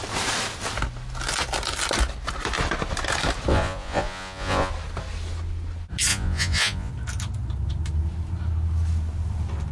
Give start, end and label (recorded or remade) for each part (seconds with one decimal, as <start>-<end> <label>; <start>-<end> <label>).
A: 0.0-3.5 recorded; 3.5-4.7 remade; 4.7-6.1 recorded; 6.1-6.9 remade; 6.9-9.7 recorded